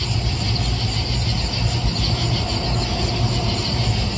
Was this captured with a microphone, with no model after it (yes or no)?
yes